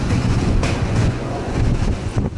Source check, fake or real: fake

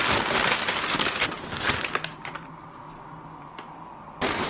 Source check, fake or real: real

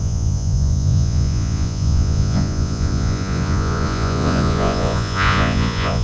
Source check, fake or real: fake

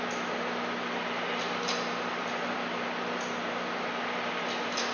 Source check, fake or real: real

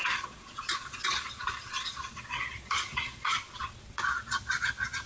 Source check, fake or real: fake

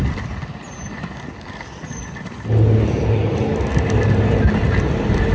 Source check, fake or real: real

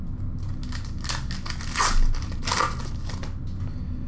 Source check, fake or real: real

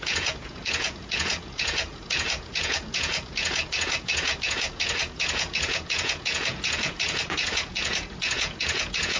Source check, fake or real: fake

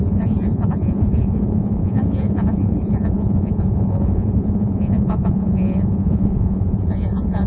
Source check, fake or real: fake